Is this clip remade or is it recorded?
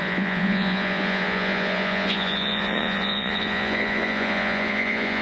remade